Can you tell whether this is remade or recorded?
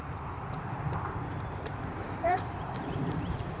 remade